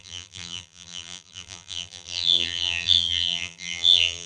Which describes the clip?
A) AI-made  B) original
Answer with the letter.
A